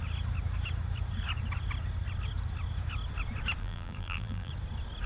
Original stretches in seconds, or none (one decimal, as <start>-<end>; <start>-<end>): 0.0-3.6; 4.5-5.1